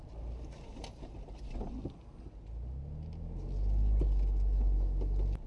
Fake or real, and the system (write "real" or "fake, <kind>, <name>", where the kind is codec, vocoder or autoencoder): real